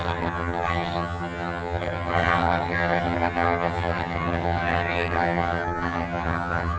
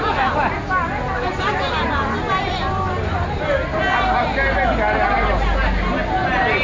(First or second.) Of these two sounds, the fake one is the first